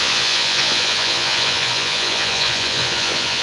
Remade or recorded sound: remade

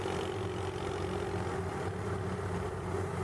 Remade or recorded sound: recorded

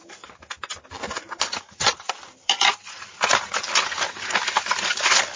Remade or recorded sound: recorded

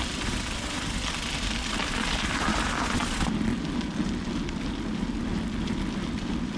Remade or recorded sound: recorded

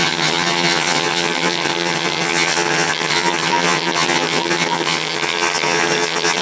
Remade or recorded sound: remade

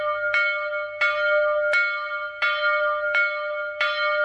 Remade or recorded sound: recorded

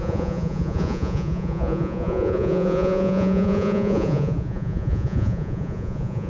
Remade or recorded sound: remade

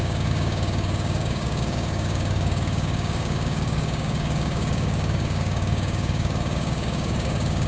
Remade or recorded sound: remade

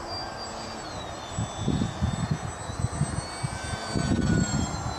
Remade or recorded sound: recorded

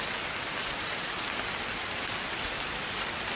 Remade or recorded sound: recorded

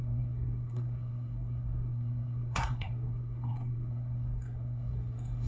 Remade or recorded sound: remade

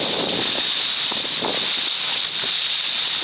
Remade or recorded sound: recorded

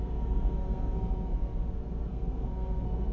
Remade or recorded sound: remade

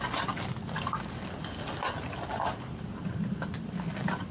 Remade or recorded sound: recorded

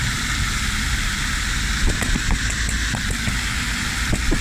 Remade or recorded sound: recorded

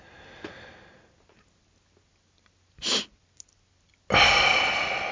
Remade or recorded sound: recorded